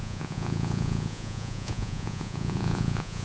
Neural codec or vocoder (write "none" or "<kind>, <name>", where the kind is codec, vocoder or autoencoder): vocoder, Vocos